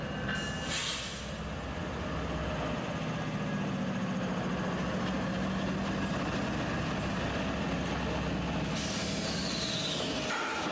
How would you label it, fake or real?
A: real